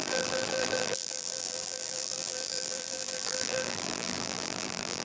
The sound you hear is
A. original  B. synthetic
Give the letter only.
B